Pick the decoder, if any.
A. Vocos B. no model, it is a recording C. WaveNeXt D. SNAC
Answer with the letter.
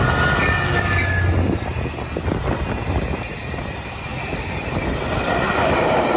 B